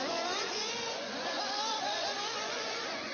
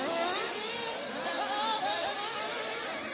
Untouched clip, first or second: second